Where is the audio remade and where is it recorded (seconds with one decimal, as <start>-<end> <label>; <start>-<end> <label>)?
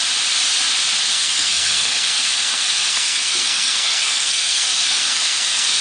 0.0-1.1 recorded; 1.1-5.8 remade